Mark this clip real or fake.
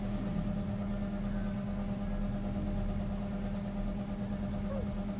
real